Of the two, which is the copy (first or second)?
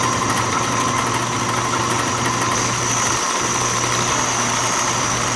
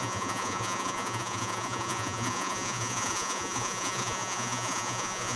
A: second